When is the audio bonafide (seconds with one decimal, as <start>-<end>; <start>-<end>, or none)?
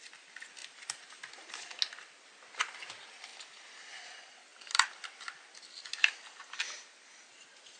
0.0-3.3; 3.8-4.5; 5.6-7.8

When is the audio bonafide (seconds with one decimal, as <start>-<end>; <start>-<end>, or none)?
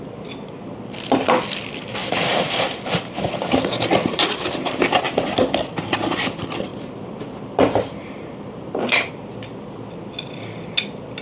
0.0-2.0; 4.8-6.7; 9.1-11.2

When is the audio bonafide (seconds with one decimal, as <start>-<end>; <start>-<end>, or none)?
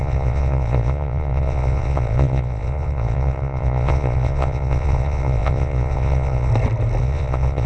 6.5-7.0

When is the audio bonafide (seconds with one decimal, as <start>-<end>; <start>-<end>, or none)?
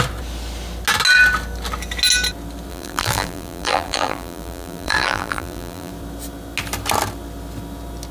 0.0-2.7; 5.9-8.1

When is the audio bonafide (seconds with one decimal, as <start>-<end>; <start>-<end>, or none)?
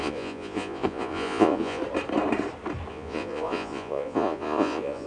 1.8-2.9